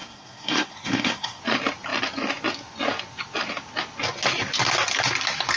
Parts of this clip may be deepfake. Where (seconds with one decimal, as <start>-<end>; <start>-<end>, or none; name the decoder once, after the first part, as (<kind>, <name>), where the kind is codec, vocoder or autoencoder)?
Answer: 0.0-1.4 (codec, SNAC)